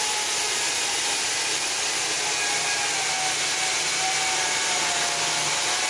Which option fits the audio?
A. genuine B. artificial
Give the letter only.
A